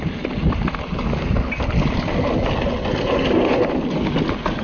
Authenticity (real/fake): real